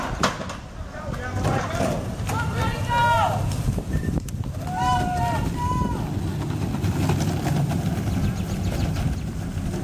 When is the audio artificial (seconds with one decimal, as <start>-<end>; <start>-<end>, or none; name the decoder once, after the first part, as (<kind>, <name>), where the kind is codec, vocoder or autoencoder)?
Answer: none